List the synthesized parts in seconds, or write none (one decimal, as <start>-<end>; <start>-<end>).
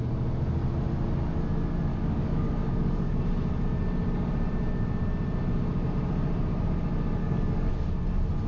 1.9-3.2; 7.2-7.7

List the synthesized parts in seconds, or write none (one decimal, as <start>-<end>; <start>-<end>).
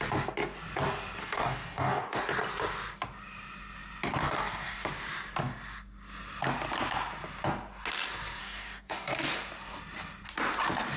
1.2-2.2; 4.2-4.9; 8.4-9.3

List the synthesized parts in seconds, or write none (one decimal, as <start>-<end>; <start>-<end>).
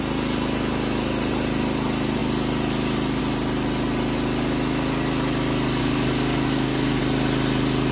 5.8-7.0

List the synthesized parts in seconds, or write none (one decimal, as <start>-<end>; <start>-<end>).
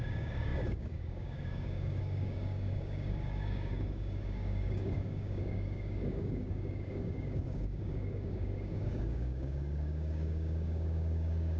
0.0-11.6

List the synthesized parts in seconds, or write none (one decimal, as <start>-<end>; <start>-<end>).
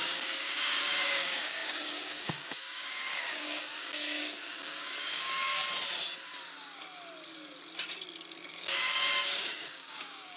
0.0-5.6; 8.5-10.4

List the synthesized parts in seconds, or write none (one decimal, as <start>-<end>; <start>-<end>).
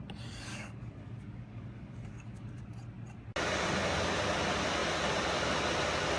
0.5-2.6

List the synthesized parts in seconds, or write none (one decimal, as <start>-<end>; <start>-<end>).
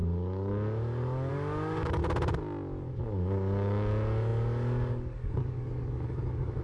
0.0-2.0; 2.8-6.6